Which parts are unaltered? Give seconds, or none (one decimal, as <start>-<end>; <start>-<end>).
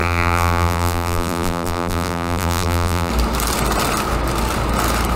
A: 3.1-5.2